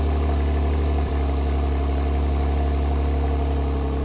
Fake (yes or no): yes